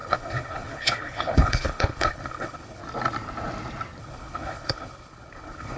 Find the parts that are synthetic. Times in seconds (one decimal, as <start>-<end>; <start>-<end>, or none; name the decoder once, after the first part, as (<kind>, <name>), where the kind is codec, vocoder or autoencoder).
0.0-2.8 (codec, HILCodec); 4.0-5.8